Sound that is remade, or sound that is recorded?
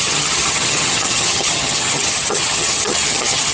remade